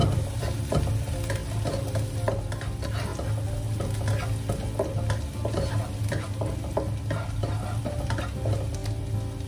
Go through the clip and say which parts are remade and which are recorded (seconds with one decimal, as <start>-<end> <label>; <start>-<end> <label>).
0.0-0.8 remade; 0.8-9.5 recorded